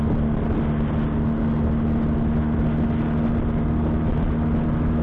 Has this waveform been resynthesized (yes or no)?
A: no